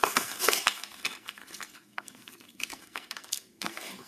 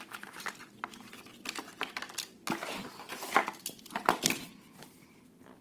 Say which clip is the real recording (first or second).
second